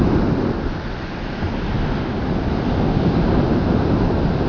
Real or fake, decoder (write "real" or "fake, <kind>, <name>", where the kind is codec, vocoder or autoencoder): real